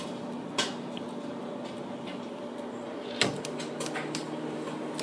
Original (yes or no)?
yes